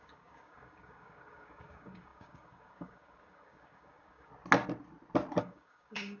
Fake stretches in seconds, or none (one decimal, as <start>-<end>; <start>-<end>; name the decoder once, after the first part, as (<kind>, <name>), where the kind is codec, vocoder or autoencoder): 0.0-4.3 (codec, DAC); 5.4-6.2